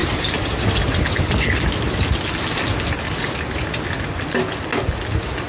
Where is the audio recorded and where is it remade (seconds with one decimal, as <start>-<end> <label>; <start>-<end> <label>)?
0.0-5.5 recorded